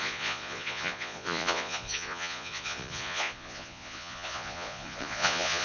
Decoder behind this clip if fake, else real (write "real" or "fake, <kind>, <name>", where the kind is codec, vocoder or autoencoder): fake, vocoder, Vocos